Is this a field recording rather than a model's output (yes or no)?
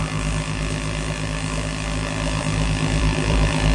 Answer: no